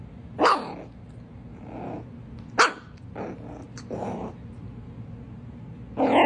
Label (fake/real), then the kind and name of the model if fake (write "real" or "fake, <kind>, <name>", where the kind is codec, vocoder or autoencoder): real